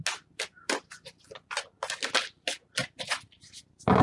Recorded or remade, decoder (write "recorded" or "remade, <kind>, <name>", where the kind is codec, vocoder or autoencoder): recorded